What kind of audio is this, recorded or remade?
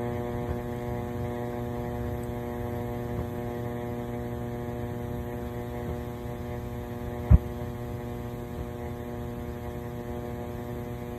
recorded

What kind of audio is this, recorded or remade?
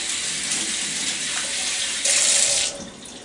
recorded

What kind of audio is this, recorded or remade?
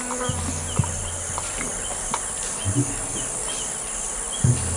recorded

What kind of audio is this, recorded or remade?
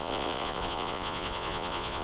remade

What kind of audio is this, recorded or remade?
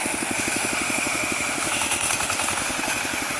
remade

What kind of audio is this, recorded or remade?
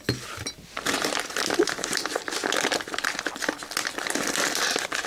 recorded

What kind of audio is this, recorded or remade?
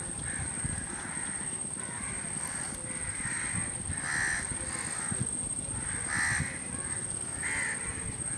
recorded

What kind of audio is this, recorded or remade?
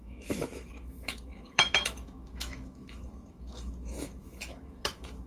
remade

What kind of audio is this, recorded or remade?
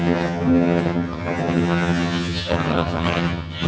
remade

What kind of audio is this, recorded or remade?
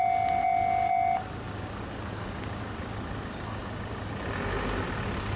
recorded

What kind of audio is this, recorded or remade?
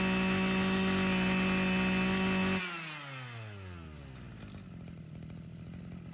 recorded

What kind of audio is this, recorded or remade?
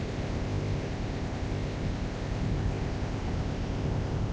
remade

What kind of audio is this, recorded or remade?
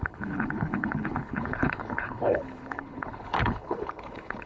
remade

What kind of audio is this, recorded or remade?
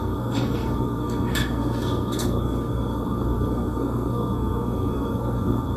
remade